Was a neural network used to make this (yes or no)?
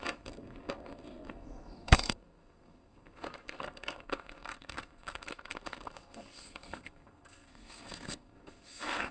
yes